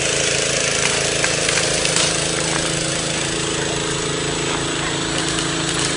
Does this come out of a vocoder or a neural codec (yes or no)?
no